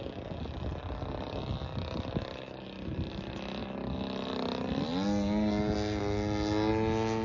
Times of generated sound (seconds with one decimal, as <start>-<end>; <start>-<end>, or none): none